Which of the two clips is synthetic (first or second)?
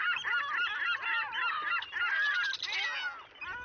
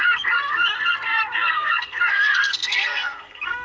second